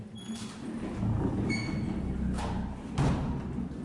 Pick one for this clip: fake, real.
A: real